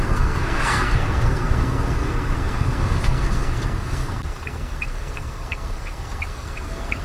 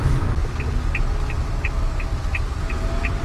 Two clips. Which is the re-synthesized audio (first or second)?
first